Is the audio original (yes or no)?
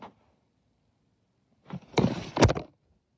yes